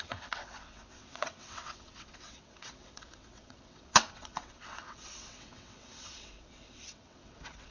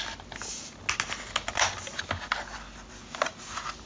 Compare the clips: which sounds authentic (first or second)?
second